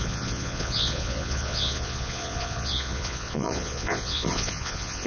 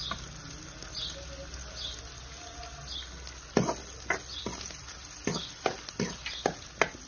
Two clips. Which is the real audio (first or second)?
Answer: second